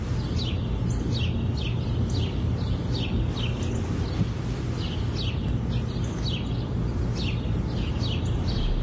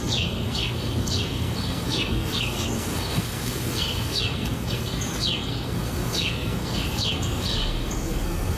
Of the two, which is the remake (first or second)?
second